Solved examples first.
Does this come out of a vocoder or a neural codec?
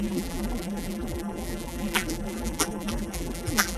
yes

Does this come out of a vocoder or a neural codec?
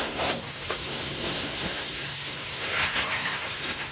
yes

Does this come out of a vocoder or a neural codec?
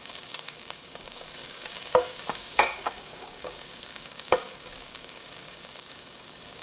yes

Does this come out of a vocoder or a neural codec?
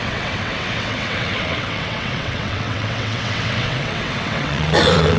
yes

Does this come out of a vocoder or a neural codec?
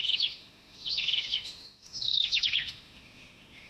yes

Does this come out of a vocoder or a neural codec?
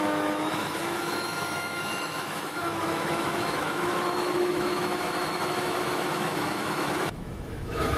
yes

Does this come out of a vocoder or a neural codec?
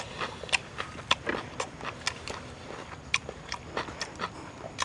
no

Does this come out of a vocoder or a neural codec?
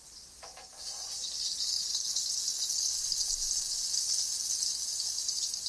no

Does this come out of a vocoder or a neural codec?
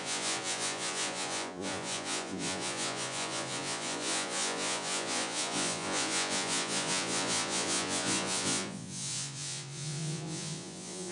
yes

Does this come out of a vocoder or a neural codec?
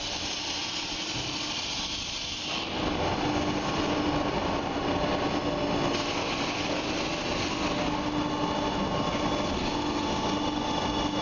no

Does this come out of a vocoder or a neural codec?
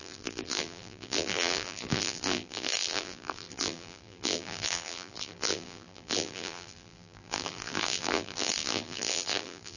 yes